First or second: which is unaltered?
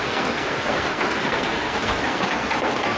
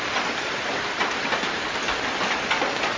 second